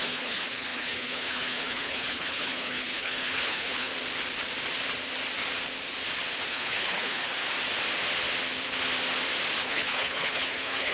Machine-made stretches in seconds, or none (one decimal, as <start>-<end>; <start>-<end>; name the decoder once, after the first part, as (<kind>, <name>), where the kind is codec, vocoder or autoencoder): 0.0-3.9 (codec, HILCodec); 6.5-7.3; 9.6-10.9